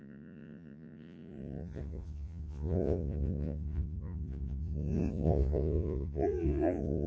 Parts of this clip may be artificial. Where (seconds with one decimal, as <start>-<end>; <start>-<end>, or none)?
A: 0.0-7.1